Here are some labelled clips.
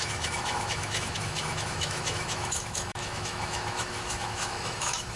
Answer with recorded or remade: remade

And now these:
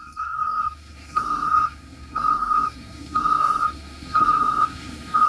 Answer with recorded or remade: remade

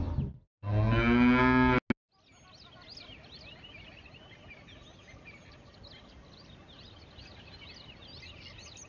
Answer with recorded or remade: recorded